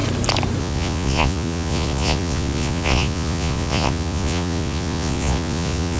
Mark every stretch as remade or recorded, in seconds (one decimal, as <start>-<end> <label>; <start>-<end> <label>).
0.0-0.6 recorded; 0.6-6.0 remade